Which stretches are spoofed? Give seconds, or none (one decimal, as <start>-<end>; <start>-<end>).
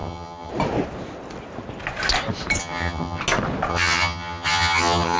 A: 0.0-0.5; 2.6-3.2; 3.7-5.2